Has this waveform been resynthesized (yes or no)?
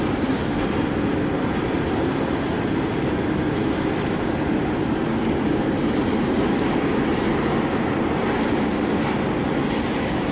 no